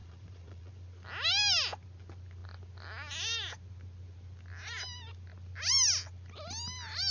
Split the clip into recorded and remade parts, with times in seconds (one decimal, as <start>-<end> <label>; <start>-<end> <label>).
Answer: 0.0-0.7 remade; 0.7-7.1 recorded